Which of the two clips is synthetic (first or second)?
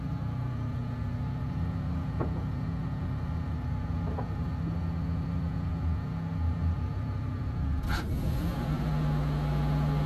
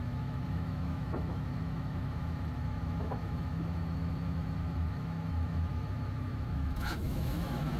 second